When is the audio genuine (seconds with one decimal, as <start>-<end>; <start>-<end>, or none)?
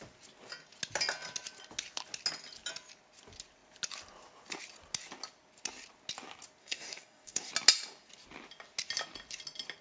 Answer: 0.0-6.6; 7.5-9.8